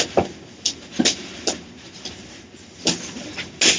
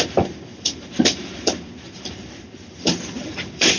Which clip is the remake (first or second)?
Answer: second